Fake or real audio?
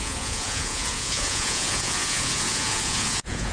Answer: fake